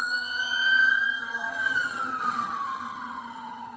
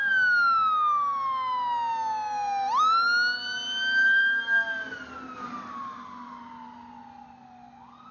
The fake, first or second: first